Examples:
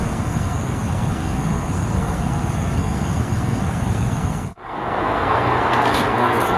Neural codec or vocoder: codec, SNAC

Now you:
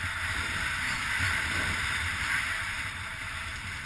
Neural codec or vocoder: none